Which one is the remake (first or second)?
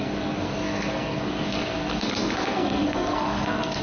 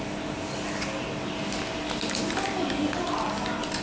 first